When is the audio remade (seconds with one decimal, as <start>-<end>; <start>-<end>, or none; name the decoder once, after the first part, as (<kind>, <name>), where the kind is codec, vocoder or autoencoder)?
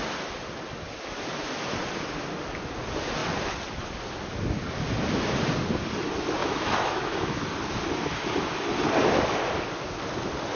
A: 6.4-7.4 (autoencoder, DAC-VAE)